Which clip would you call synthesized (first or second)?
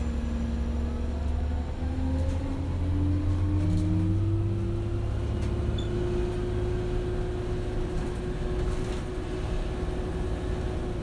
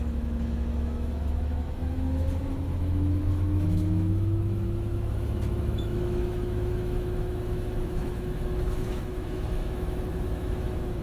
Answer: second